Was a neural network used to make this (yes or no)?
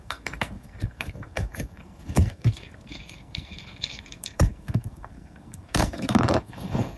yes